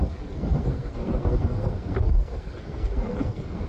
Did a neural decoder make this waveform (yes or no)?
yes